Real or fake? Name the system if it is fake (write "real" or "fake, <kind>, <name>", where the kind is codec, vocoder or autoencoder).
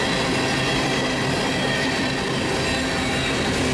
real